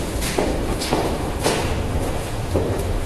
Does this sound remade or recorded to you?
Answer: remade